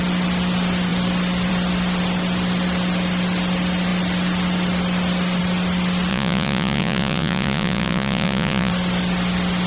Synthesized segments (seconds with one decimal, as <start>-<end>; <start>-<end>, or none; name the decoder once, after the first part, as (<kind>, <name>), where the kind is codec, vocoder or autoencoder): 6.1-8.7 (vocoder, Vocos)